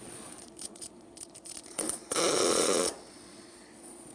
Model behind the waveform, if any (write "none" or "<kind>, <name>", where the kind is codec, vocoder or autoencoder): vocoder, Vocos